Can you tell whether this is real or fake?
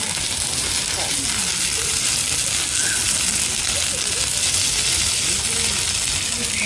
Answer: real